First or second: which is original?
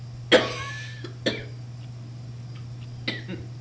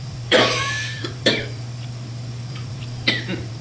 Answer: first